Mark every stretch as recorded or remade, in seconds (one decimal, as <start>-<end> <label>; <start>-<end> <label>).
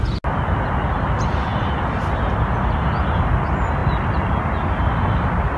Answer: 0.0-5.6 recorded